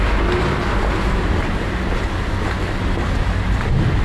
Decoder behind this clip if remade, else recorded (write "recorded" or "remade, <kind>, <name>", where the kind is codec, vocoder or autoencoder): recorded